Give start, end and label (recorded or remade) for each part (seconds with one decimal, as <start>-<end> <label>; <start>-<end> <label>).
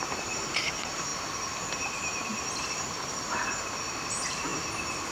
0.0-1.1 remade; 1.1-4.1 recorded; 4.1-4.5 remade; 4.5-5.1 recorded